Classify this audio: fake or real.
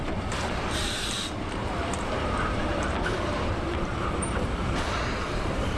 fake